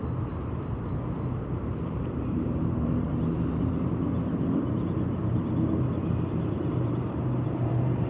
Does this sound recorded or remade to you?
remade